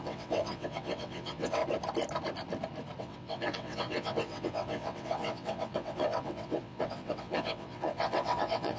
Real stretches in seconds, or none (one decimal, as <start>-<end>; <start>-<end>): 1.6-3.0